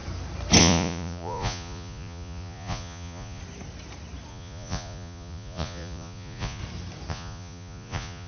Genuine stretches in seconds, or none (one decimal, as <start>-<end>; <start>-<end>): 0.0-0.6; 3.4-4.3; 6.6-7.1